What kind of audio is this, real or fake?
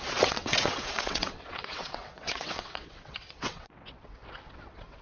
fake